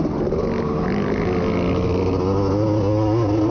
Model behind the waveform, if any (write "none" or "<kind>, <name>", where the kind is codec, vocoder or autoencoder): none